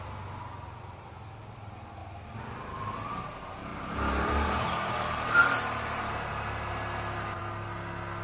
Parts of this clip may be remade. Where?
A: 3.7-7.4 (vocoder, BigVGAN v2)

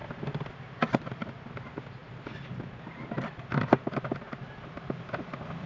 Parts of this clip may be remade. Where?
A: 0.0-1.5 (vocoder, BigVGAN v2)

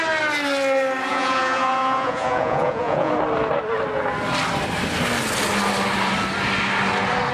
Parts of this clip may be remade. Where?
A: 1.1-3.1 (vocoder, Vocos)